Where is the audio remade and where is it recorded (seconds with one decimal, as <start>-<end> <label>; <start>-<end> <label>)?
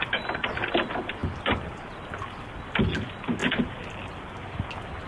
0.0-5.1 recorded